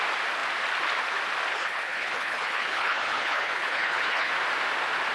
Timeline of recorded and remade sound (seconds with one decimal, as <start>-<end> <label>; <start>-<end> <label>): 0.0-1.5 recorded; 1.5-4.3 remade; 4.3-5.1 recorded